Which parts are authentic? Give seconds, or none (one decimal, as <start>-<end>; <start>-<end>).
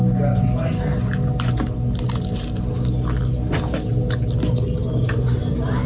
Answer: 0.0-5.9